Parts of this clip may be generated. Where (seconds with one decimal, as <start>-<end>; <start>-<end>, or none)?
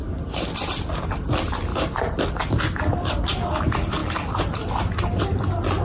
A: 1.7-2.2